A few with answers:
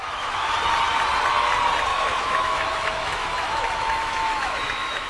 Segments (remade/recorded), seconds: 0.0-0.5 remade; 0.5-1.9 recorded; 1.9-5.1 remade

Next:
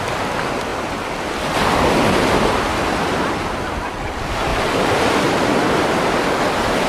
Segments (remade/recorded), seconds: 0.0-4.5 recorded; 4.5-5.1 remade; 5.1-6.9 recorded

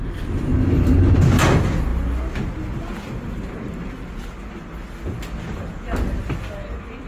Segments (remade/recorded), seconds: 0.0-7.1 recorded

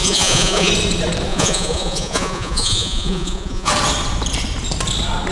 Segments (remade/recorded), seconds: 0.0-0.7 remade; 0.7-1.3 recorded; 1.3-3.7 remade; 3.7-5.3 recorded

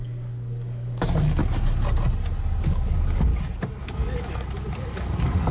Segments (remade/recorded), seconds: 0.0-1.4 remade; 1.4-2.6 recorded; 2.6-3.3 remade; 3.3-3.8 recorded; 3.8-5.5 remade